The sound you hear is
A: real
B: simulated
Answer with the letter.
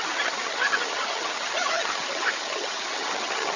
B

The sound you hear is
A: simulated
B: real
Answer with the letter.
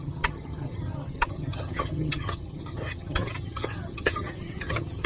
A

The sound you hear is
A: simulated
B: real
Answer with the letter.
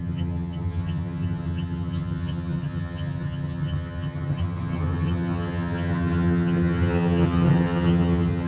A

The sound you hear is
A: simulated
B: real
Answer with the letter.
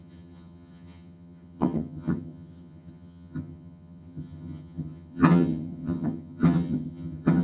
A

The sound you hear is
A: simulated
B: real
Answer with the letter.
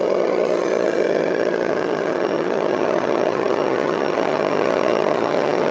A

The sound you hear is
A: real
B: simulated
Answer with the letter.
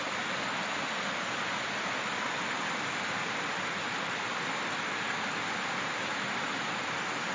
A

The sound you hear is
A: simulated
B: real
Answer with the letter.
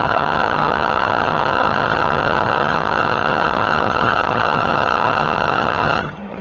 A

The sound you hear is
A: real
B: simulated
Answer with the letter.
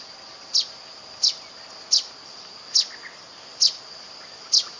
A